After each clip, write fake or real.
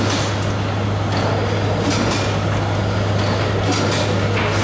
real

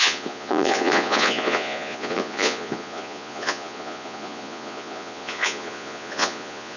fake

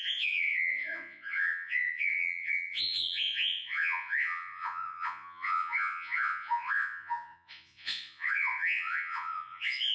fake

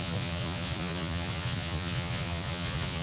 fake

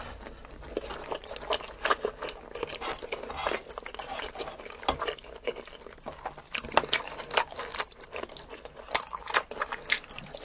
real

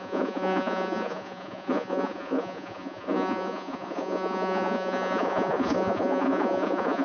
fake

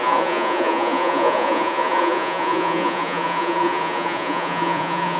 fake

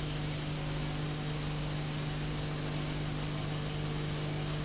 real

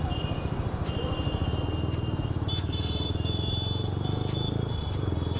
real